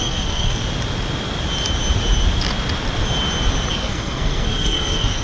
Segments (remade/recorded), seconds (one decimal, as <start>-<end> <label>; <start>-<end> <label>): 0.0-0.6 remade; 0.6-3.7 recorded; 3.7-5.2 remade